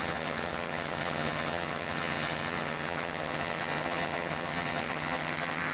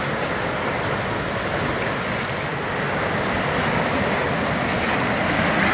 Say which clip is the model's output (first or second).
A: first